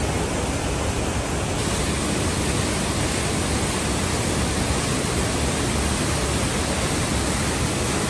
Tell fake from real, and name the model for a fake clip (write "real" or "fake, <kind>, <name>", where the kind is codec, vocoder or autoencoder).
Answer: real